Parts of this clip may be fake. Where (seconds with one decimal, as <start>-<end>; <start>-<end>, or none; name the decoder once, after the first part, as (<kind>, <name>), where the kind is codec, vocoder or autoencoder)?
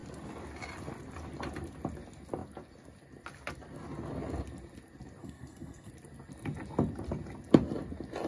5.2-5.9 (codec, SNAC)